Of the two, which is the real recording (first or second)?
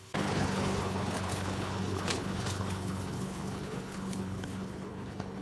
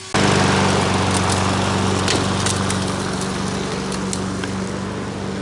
second